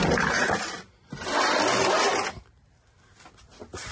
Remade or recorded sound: recorded